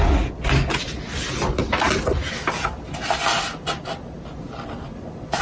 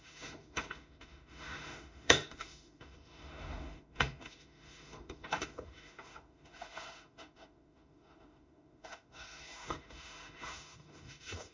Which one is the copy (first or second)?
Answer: second